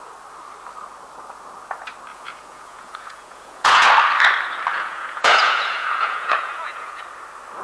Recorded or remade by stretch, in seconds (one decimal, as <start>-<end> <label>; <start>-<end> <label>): 0.0-2.1 recorded; 2.1-3.9 remade; 3.9-4.7 recorded; 4.7-7.0 remade; 7.0-7.6 recorded